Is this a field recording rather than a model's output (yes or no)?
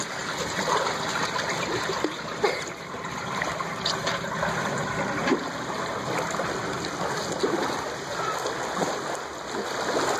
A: yes